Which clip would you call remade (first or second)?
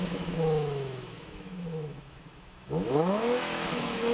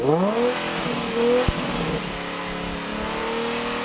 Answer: first